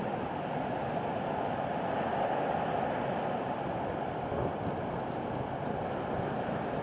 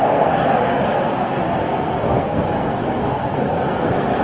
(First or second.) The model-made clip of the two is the second